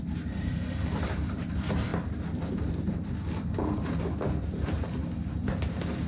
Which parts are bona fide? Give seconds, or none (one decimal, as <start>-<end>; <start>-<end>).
0.0-6.1